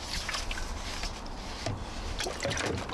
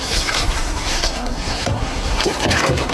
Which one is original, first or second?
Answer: first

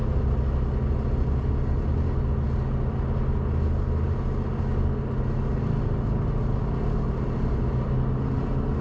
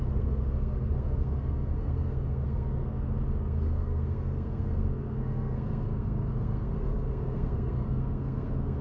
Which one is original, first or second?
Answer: first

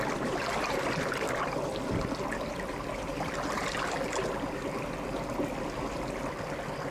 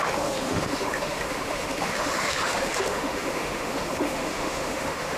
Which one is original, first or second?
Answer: first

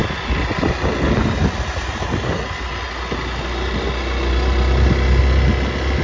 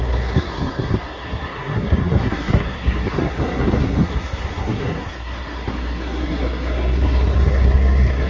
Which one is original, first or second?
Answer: first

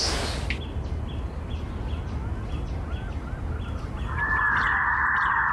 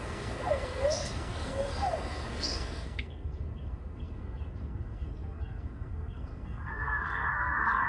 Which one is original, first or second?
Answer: first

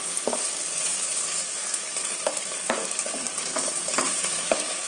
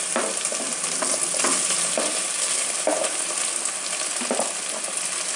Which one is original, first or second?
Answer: second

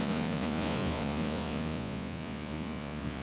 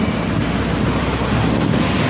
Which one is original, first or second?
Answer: second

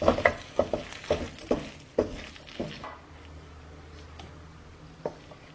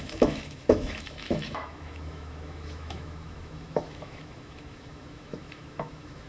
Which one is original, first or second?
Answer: first